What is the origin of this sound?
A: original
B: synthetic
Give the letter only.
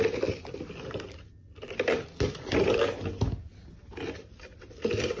A